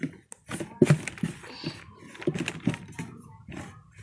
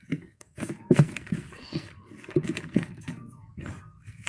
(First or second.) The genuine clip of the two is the first